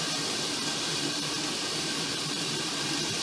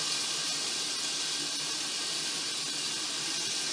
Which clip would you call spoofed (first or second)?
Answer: first